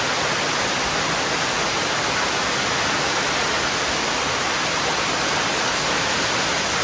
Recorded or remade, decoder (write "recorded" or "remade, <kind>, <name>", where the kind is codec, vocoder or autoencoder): recorded